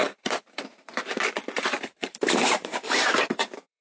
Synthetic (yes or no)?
yes